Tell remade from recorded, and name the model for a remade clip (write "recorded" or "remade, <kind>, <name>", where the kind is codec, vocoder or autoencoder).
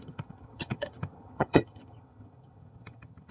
remade, vocoder, HiFi-GAN